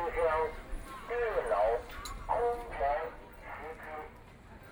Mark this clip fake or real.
real